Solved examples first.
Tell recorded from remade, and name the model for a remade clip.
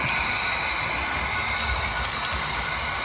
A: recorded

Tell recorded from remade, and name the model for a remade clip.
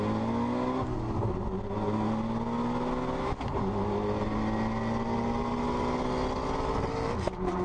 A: recorded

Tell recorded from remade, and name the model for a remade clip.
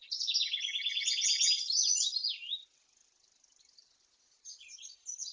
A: recorded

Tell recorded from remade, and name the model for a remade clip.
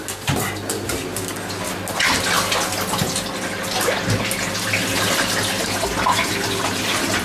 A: recorded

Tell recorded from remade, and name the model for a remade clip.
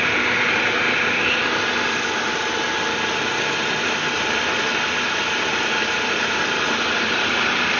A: recorded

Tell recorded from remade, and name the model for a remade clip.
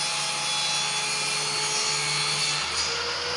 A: recorded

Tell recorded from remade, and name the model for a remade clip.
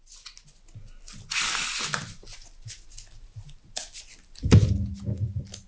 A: recorded